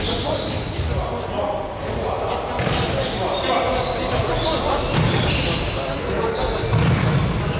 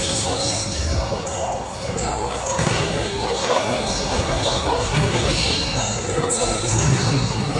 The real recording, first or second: first